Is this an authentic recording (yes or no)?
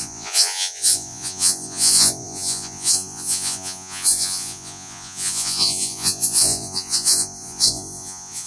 no